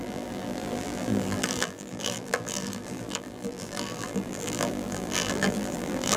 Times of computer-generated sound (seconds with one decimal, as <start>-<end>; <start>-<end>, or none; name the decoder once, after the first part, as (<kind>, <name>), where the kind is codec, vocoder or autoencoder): 0.0-6.2 (vocoder, BigVGAN v2)